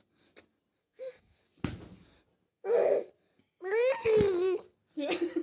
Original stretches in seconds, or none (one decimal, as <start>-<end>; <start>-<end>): 0.0-0.8; 1.4-2.5; 3.1-5.4